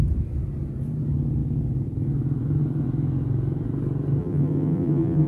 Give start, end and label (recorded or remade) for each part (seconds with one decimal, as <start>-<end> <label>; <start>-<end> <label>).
0.0-4.2 recorded; 4.2-5.3 remade